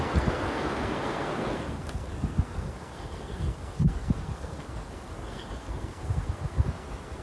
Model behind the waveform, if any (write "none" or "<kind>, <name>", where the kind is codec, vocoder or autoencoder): codec, SNAC